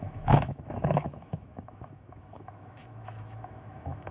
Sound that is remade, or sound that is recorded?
remade